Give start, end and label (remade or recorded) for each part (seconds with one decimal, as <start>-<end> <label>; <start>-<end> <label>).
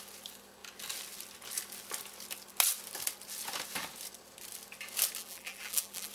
0.0-5.2 recorded; 5.2-6.1 remade